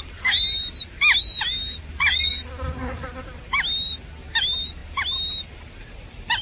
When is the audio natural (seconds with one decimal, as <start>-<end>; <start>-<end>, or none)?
0.0-6.4

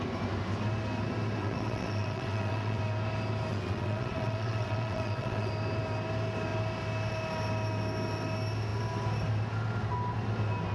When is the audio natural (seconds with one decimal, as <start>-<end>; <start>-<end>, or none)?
0.0-1.4; 2.8-3.5; 5.5-10.7